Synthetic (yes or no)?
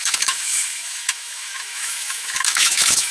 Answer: yes